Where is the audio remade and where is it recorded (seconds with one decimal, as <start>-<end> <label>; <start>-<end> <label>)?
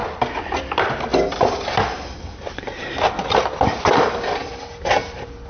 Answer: 0.0-5.5 recorded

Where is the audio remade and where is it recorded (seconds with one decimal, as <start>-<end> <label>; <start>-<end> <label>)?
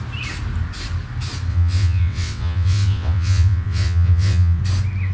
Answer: 0.0-1.5 recorded; 1.5-4.6 remade; 4.6-5.1 recorded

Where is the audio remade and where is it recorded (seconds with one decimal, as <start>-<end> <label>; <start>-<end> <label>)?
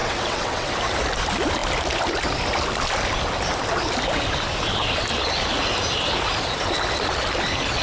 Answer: 0.0-0.7 remade; 0.7-7.8 recorded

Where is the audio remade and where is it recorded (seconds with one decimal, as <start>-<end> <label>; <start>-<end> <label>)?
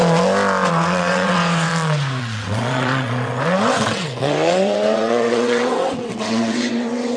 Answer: 0.0-0.7 recorded; 0.7-1.7 remade; 1.7-2.2 recorded; 2.2-7.2 remade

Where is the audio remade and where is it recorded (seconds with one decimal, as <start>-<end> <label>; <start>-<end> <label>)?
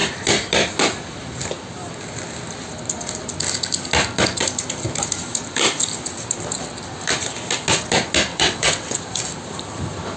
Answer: 0.0-8.3 recorded; 8.3-9.0 remade; 9.0-10.2 recorded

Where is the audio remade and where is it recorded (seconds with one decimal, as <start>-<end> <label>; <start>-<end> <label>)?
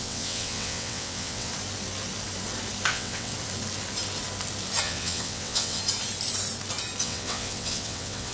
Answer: 0.0-1.5 remade; 1.5-2.9 recorded; 2.9-3.3 remade; 3.3-4.8 recorded; 4.8-5.8 remade; 5.8-7.0 recorded; 7.0-8.3 remade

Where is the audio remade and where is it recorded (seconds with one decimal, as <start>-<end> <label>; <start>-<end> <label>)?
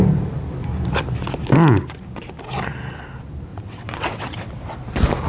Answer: 0.0-3.5 recorded; 3.5-4.7 remade; 4.7-5.3 recorded